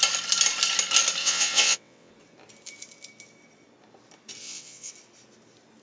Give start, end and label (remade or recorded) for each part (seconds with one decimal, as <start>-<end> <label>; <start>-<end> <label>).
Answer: 0.0-1.2 recorded; 1.2-2.1 remade; 2.1-4.4 recorded; 4.4-4.9 remade; 4.9-5.8 recorded